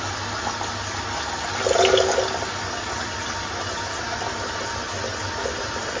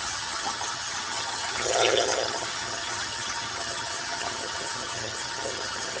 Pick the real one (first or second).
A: first